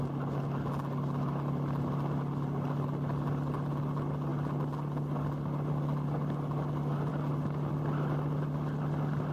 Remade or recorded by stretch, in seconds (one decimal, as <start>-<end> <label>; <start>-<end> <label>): 0.0-9.3 recorded